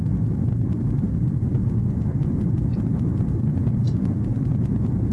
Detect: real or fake real